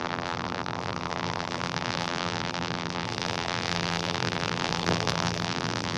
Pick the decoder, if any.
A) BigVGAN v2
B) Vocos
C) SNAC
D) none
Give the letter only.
A